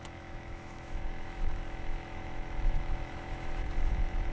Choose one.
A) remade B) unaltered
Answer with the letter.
A